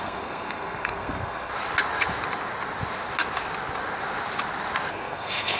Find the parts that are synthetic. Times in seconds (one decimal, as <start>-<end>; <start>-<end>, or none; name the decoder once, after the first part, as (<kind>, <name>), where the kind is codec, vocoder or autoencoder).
0.0-1.5 (codec, SNAC); 4.9-5.6